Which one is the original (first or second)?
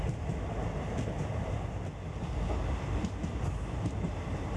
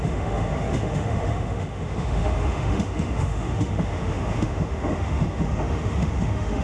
first